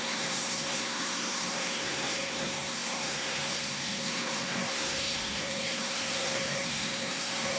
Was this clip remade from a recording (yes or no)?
yes